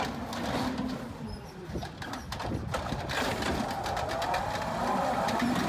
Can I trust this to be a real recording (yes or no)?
yes